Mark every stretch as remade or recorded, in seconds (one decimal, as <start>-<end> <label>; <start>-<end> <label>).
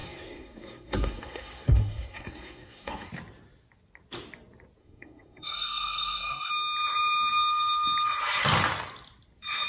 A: 0.0-3.1 remade; 3.1-4.8 recorded; 4.8-6.5 remade; 6.5-9.7 recorded